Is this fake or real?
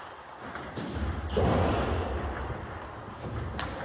real